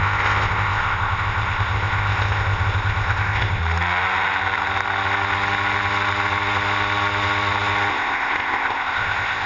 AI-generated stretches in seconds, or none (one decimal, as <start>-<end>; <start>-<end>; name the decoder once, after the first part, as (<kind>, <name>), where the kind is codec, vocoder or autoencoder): 0.0-3.6 (codec, ZipCodec); 7.9-9.5